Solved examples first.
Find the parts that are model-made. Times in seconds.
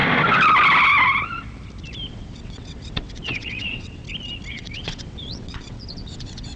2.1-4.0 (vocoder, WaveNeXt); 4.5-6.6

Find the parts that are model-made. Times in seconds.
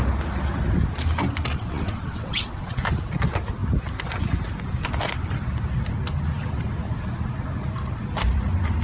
1.5-2.8 (vocoder, WaveNeXt)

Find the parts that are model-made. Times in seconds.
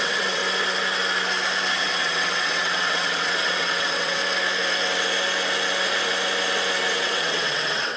0.0-0.4 (vocoder, WaveNeXt); 1.7-4.2; 6.9-8.0